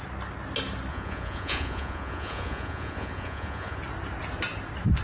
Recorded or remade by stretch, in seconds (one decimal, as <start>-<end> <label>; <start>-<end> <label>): 0.0-0.9 recorded; 0.9-3.8 remade; 3.8-5.0 recorded